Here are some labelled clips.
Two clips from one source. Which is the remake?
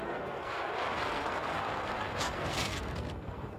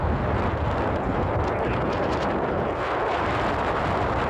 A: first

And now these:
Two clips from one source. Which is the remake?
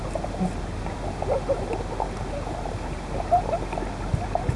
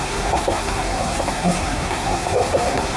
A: second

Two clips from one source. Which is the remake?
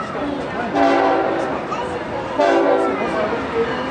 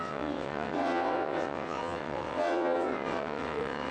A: second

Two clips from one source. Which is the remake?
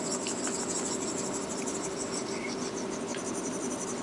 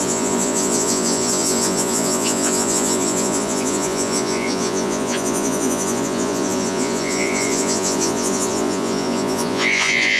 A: second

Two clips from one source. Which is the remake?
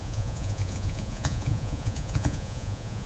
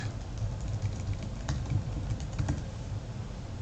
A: first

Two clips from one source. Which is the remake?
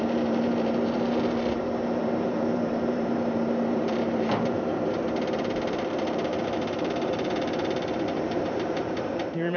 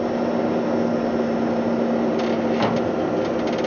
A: first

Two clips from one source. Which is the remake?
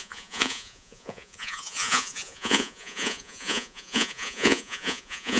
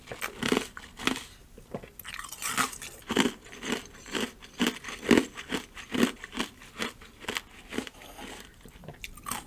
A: first